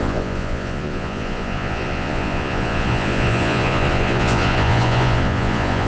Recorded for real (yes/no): no